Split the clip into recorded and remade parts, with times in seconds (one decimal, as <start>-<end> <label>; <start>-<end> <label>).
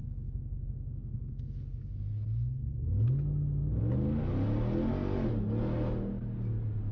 0.0-2.8 remade; 2.8-6.9 recorded